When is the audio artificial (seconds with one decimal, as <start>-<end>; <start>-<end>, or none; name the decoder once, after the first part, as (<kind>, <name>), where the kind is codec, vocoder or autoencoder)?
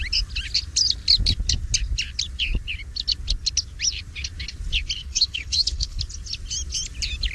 5.0-6.0 (codec, HILCodec)